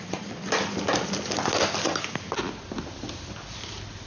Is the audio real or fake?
real